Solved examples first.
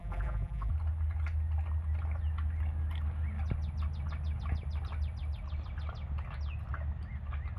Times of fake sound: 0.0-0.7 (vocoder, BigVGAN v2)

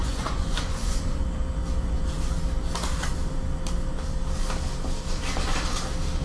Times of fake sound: 0.0-1.1 (vocoder, Vocos)

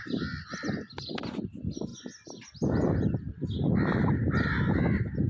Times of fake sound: none